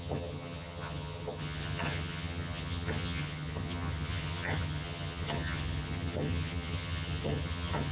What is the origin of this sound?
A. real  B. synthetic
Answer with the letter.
B